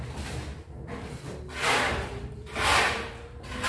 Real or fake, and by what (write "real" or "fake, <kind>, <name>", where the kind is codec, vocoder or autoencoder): real